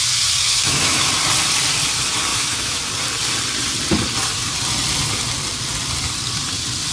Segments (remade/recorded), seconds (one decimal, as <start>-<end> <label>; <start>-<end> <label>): 0.0-0.4 recorded; 0.4-1.1 remade; 1.1-2.3 recorded; 2.3-2.8 remade; 2.8-6.9 recorded